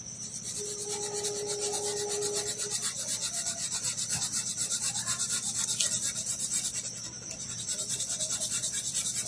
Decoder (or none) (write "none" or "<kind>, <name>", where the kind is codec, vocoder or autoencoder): none